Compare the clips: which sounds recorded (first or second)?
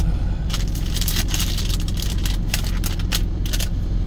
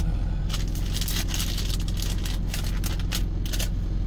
second